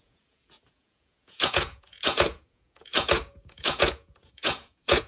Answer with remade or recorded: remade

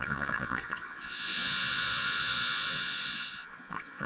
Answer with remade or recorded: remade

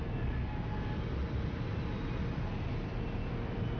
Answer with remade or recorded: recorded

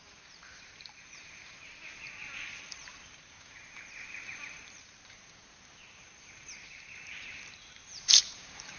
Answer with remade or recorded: remade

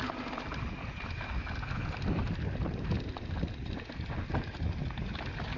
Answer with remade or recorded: recorded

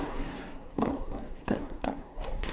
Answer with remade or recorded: remade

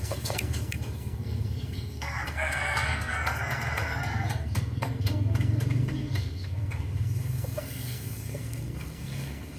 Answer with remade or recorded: remade